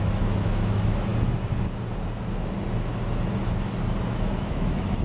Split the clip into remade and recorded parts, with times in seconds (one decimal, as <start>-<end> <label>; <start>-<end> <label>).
0.0-1.1 remade; 1.1-4.1 recorded; 4.1-5.0 remade